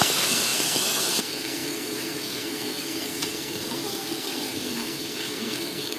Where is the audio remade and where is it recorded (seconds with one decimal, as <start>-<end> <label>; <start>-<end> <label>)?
0.0-6.0 remade